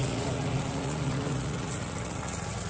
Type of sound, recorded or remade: remade